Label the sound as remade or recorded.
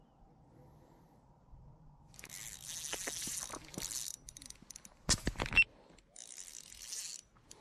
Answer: recorded